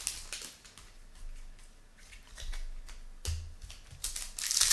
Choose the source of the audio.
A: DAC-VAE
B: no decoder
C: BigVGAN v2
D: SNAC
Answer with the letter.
B